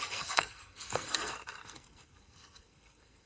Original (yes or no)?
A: no